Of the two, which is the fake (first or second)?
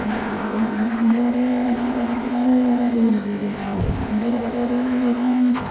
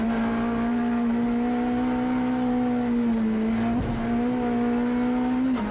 first